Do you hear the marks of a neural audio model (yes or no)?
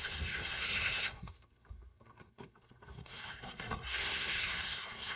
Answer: yes